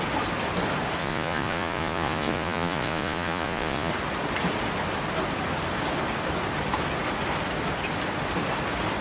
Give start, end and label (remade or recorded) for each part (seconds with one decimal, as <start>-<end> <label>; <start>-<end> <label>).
0.0-1.0 recorded; 1.0-3.9 remade; 3.9-9.0 recorded